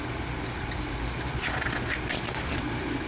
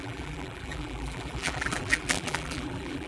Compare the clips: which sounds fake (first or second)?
second